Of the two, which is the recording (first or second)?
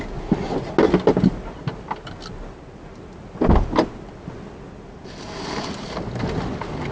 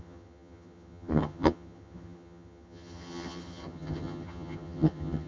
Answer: first